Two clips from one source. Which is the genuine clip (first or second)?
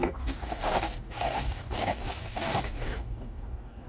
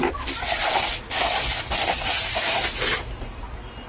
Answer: second